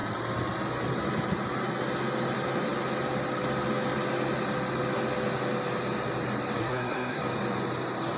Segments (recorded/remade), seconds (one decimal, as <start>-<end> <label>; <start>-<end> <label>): 0.0-6.6 recorded; 6.6-7.2 remade; 7.2-8.2 recorded